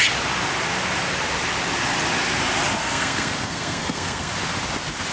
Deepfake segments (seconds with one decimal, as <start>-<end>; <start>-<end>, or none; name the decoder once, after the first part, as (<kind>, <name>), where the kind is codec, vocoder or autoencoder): 2.8-4.3 (codec, SNAC)